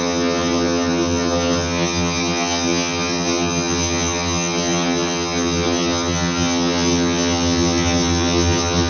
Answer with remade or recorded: remade